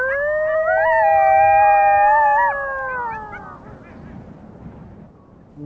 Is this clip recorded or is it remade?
recorded